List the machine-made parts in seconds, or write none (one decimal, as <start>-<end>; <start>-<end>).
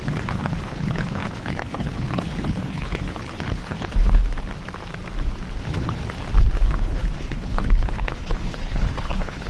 0.0-4.2; 5.6-6.0; 6.7-9.5